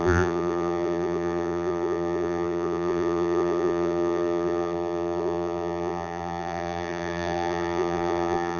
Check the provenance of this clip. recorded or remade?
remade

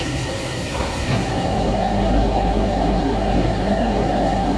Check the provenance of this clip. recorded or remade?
remade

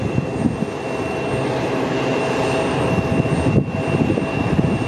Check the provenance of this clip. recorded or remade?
recorded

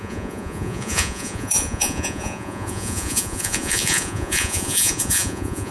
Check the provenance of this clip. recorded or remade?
remade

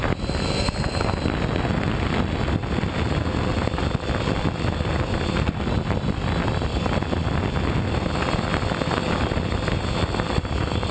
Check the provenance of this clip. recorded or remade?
recorded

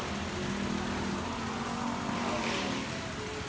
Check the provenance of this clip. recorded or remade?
recorded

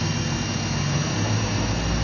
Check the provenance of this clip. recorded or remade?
recorded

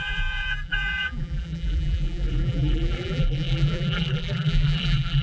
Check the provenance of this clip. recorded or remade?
remade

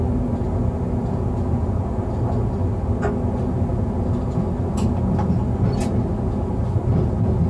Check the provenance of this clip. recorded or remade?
recorded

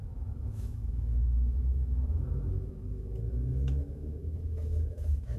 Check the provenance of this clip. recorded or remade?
remade